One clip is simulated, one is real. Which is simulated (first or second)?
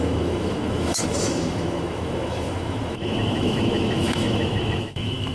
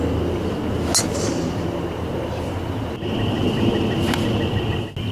first